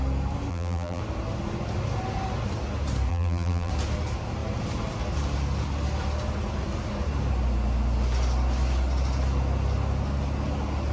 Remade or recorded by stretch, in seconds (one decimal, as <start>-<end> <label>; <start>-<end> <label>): 0.0-0.5 recorded; 0.5-1.0 remade; 1.0-3.1 recorded; 3.1-3.7 remade; 3.7-10.9 recorded